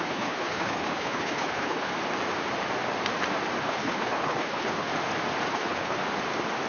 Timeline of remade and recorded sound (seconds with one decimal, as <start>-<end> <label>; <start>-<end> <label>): 0.0-1.9 remade; 1.9-3.6 recorded; 3.6-4.9 remade; 4.9-5.5 recorded; 5.5-6.0 remade; 6.0-6.7 recorded